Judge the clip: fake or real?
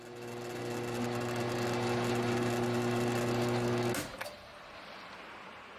real